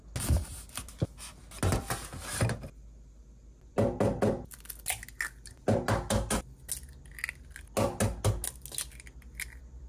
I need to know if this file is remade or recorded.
recorded